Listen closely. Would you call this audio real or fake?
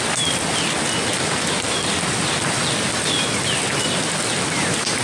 real